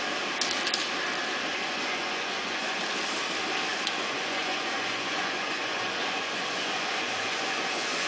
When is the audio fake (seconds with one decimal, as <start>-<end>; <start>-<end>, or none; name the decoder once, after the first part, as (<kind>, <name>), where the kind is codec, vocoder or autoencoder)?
1.5-2.8 (vocoder, Vocos); 3.7-8.1